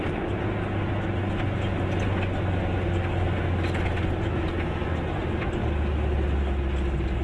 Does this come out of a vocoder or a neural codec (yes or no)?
no